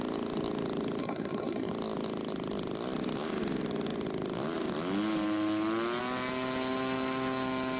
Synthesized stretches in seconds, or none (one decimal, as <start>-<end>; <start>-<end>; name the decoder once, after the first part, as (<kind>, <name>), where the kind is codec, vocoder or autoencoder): 1.0-1.7 (codec, SNAC)